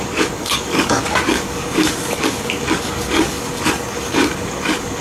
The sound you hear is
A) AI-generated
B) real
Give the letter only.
A